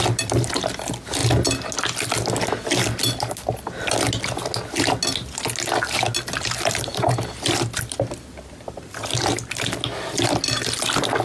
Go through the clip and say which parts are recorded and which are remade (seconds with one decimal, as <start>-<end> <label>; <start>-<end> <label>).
0.0-11.2 recorded